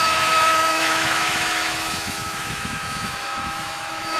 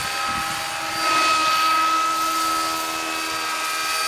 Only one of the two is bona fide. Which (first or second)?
second